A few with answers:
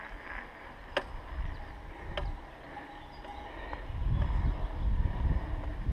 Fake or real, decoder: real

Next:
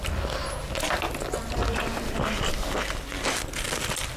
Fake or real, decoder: real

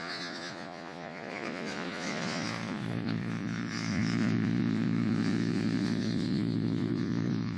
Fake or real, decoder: fake, vocoder, Vocos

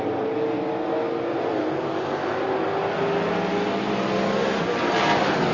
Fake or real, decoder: real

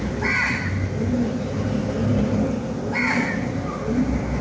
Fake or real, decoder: real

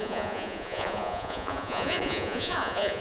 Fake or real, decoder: fake, vocoder, Vocos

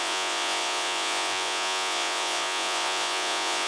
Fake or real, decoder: fake, vocoder, Vocos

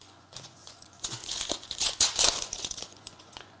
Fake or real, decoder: fake, vocoder, Vocos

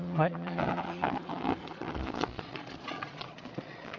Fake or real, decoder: fake, vocoder, Vocos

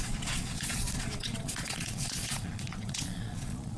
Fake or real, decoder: fake, vocoder, Vocos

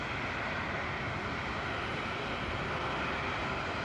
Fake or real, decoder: real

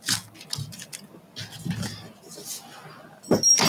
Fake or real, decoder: real